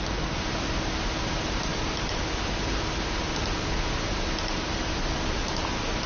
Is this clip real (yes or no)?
yes